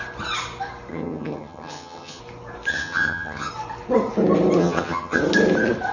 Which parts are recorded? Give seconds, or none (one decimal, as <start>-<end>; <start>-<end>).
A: 0.0-0.9; 2.2-2.7; 3.5-4.6; 5.2-5.9

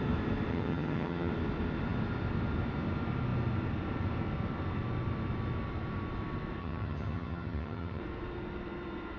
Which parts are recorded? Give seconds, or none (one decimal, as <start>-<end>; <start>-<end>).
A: 0.0-0.5; 1.3-6.6; 8.0-9.2

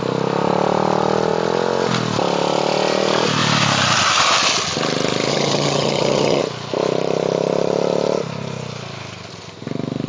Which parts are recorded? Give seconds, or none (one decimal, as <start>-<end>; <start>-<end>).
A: 0.0-5.3; 6.4-10.1